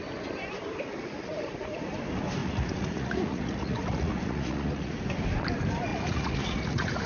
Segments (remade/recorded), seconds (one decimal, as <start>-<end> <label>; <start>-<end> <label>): 0.0-1.3 recorded; 1.3-1.9 remade; 1.9-2.4 recorded; 2.4-5.0 remade; 5.0-5.9 recorded; 5.9-7.1 remade